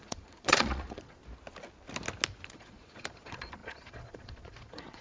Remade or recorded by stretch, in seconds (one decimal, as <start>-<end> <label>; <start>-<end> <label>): 0.0-1.2 remade; 1.2-2.5 recorded; 2.5-5.0 remade